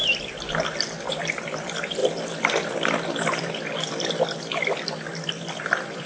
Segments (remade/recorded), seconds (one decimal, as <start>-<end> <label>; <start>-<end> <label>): 0.0-1.1 recorded; 1.1-2.0 remade; 2.0-5.6 recorded; 5.6-6.1 remade